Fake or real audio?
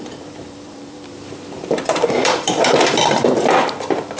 fake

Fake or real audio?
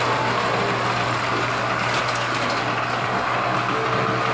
real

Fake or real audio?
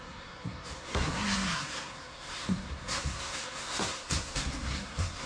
fake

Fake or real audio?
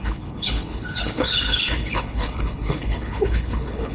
fake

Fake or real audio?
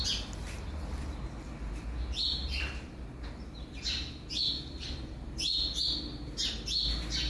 real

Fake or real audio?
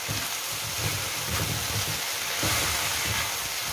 real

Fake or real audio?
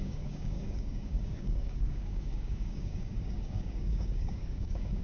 fake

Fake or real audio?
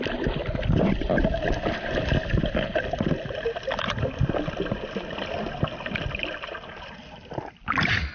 real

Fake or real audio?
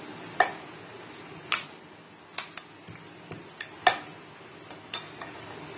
real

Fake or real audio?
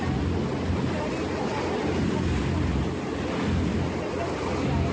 real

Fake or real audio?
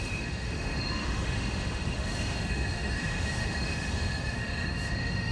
fake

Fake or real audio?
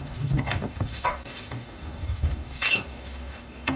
fake